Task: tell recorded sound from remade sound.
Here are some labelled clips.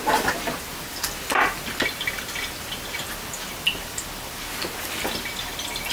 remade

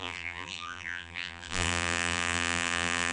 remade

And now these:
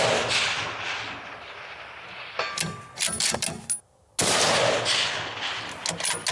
recorded